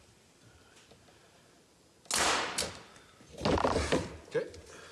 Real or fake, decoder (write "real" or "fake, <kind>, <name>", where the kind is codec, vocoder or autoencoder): real